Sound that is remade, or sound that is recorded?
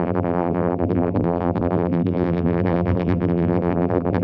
remade